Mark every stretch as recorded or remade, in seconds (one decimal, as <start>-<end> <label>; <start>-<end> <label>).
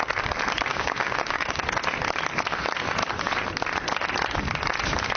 0.0-0.7 recorded; 0.7-1.6 remade; 1.6-5.2 recorded